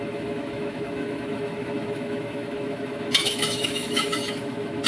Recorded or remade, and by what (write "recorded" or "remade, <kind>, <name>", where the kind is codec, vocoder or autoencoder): remade, autoencoder, DAC-VAE